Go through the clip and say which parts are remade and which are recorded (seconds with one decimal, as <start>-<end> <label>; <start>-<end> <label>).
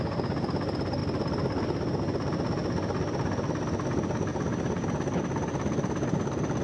0.0-1.0 recorded; 1.0-2.0 remade; 2.0-6.6 recorded